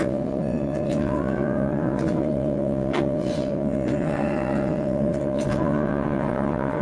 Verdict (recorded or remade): remade